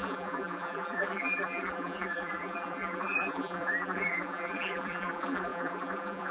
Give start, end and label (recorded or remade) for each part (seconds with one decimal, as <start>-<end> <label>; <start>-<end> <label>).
0.0-6.3 remade